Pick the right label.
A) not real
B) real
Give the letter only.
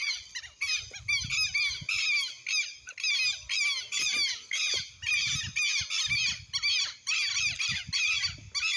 B